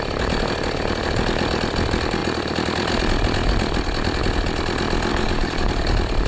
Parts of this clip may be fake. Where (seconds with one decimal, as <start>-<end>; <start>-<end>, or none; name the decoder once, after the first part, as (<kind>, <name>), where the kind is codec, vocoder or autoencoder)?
5.1-5.7 (codec, DAC)

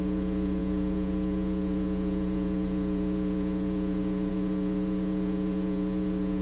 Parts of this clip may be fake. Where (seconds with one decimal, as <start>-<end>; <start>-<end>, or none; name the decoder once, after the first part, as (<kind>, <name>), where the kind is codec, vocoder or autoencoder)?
0.0-6.4 (vocoder, Vocos)